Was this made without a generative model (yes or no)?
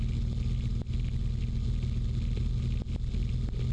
yes